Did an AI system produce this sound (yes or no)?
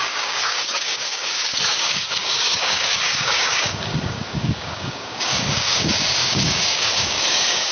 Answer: yes